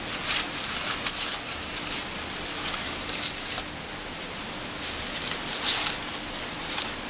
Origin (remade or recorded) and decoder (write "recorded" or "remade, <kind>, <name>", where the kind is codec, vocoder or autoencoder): recorded